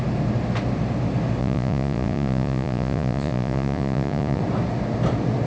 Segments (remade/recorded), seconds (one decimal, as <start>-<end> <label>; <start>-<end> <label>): 0.0-1.4 recorded; 1.4-4.4 remade; 4.4-5.5 recorded